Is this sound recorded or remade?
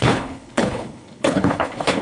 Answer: remade